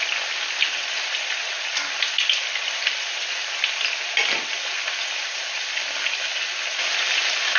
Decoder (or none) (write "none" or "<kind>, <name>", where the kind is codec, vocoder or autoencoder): none